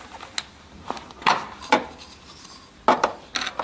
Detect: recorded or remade recorded